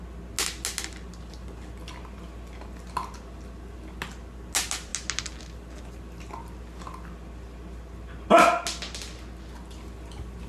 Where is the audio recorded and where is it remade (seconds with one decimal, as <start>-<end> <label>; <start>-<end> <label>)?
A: 0.0-10.5 recorded